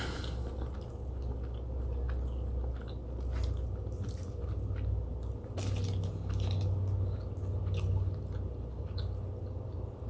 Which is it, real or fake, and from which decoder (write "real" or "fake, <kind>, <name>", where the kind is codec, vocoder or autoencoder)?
real